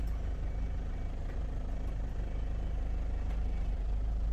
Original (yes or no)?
no